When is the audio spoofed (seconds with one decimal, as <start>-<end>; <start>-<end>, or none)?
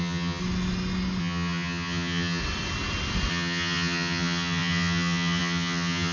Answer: 0.0-0.4; 1.2-2.4; 3.3-6.1